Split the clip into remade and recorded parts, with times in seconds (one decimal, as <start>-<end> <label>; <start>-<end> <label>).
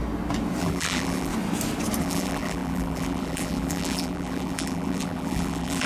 0.0-0.6 recorded; 0.6-1.3 remade; 1.3-2.0 recorded; 2.0-5.9 remade